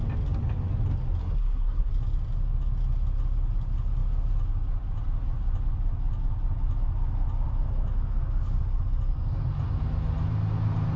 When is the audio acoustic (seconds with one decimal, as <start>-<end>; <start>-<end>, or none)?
0.0-1.2; 1.9-11.0